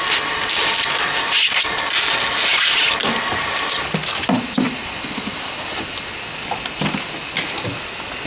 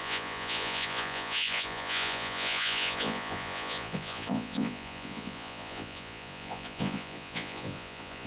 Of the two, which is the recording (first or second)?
first